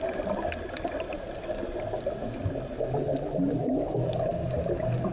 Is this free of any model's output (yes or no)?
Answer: yes